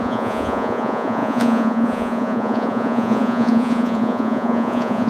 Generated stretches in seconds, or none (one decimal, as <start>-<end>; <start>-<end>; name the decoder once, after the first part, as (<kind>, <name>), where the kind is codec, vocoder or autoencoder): 0.0-5.1 (vocoder, Vocos)